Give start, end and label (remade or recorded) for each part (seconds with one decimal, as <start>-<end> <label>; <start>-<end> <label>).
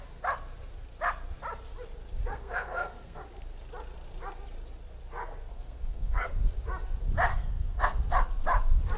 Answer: 0.0-2.3 recorded; 2.3-3.2 remade; 3.2-5.5 recorded; 5.5-6.3 remade; 6.3-7.3 recorded; 7.3-8.0 remade; 8.0-9.0 recorded